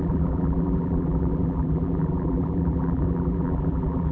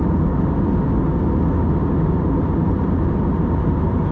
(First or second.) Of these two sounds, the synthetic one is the first